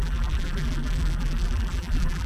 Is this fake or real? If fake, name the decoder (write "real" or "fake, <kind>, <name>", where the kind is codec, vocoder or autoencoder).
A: fake, vocoder, BigVGAN v2